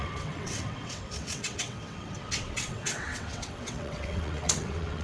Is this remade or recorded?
remade